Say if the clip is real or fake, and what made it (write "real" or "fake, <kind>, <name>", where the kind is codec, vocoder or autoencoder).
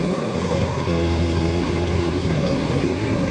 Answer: fake, codec, SNAC